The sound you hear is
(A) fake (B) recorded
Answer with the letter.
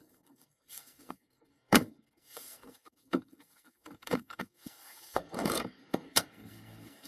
A